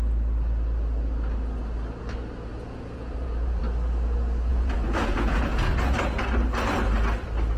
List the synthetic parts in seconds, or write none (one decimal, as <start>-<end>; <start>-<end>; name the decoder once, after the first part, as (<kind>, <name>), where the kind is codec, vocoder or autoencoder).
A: 2.5-3.6 (vocoder, Vocos); 4.5-5.7